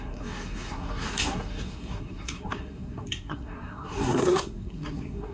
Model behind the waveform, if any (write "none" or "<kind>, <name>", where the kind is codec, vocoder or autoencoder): codec, SNAC